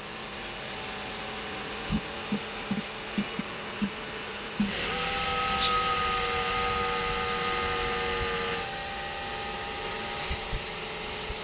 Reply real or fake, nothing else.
real